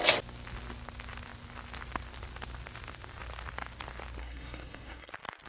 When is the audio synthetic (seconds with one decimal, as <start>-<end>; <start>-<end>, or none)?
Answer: 4.2-5.1